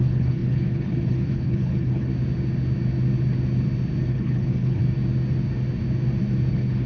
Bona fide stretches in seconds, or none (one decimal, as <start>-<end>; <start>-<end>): 2.1-4.1; 4.8-6.5